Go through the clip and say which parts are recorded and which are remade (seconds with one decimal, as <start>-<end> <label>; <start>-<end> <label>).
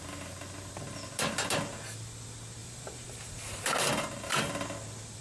0.0-2.6 recorded; 2.6-3.9 remade; 3.9-5.2 recorded